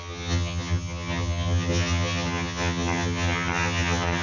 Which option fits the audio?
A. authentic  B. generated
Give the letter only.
B